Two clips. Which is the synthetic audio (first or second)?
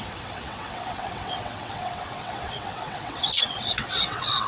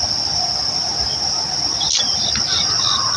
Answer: first